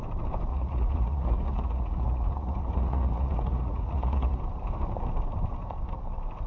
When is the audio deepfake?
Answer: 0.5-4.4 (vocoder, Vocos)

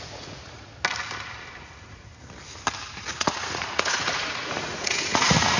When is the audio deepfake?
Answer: 0.0-0.7 (vocoder, Vocos); 1.5-2.1; 3.1-5.6

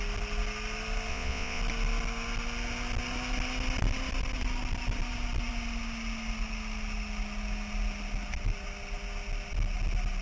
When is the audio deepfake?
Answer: 1.1-1.6 (vocoder, Vocos)

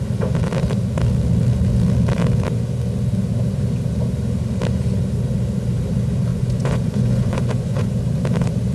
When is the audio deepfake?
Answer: 6.3-7.9 (vocoder, Vocos)

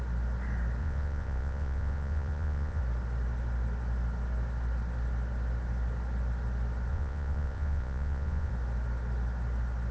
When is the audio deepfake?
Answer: 0.8-2.8 (vocoder, Vocos); 6.9-8.5

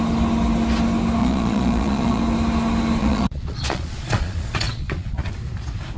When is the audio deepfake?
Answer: 1.2-2.2 (vocoder, Vocos); 3.0-5.3

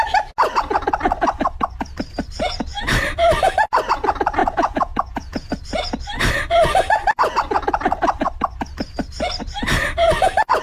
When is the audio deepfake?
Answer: 4.4-5.5 (vocoder, Vocos)

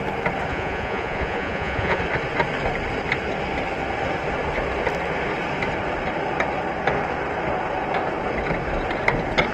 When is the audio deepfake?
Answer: 0.5-2.0 (vocoder, Vocos)